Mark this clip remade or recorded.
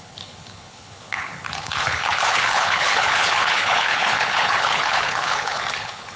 remade